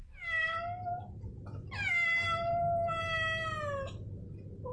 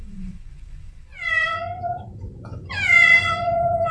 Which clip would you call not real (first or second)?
second